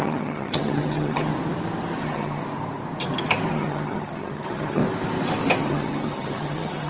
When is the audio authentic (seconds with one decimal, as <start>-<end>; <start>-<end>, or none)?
1.3-2.0; 2.4-3.5; 4.8-5.6